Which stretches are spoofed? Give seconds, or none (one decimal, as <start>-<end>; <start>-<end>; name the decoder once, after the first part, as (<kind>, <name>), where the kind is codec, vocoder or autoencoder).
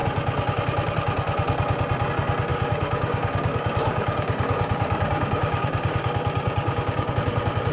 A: 2.5-7.1 (codec, DAC)